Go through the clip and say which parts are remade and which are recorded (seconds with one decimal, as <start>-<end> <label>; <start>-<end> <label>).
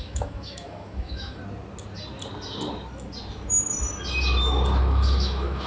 0.0-1.4 remade; 1.4-4.8 recorded; 4.8-5.7 remade